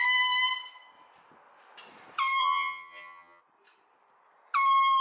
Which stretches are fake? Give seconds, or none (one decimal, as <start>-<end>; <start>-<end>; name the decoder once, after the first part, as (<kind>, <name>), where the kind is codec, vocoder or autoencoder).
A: 2.4-3.4 (vocoder, HiFi-GAN)

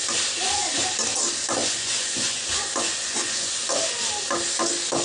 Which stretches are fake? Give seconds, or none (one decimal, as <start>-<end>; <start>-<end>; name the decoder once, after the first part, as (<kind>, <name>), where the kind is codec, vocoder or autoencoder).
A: 1.6-3.6 (vocoder, Vocos)

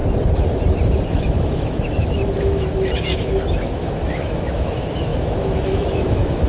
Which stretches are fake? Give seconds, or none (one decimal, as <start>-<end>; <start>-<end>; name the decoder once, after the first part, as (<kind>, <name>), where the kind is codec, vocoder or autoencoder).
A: 1.1-6.5 (autoencoder, DAC-VAE)

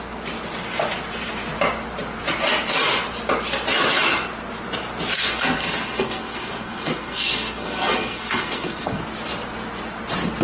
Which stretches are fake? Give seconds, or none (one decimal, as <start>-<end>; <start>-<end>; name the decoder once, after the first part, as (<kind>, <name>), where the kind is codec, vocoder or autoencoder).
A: 5.2-9.0 (codec, SNAC)